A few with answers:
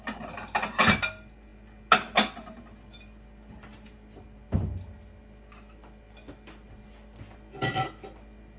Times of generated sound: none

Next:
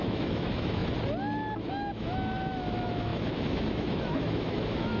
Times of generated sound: 0.0-0.8 (autoencoder, DAC-VAE); 1.7-5.0

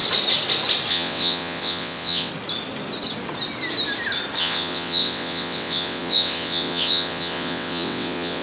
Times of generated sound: 0.9-2.3 (vocoder, WaveNeXt); 4.4-8.4

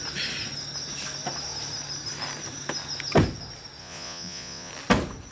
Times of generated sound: 3.8-4.7 (vocoder, Vocos)

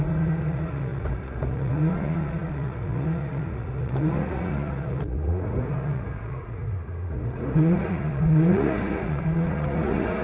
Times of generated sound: 0.0-10.2 (vocoder, Vocos)